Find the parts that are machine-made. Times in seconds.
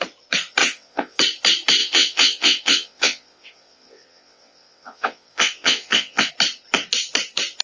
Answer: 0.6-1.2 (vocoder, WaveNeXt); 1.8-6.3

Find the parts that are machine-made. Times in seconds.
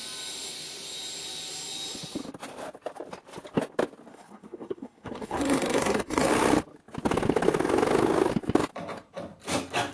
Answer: 4.1-6.3 (codec, SNAC)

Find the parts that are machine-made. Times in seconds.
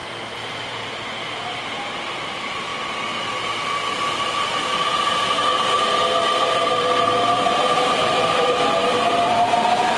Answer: 0.6-2.7 (vocoder, BigVGAN v2); 4.9-10.0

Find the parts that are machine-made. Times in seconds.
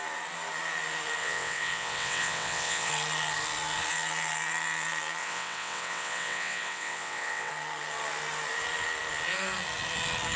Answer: 1.2-2.9 (vocoder, WaveNeXt); 5.2-7.5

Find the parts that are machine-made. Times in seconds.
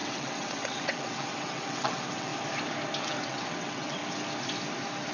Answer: 0.0-2.3 (vocoder, WaveNeXt); 3.0-4.0